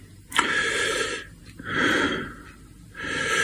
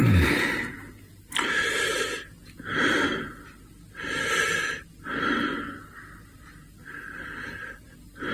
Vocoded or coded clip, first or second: first